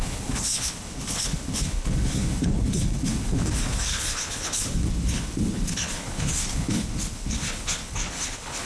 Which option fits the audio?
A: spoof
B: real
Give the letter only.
A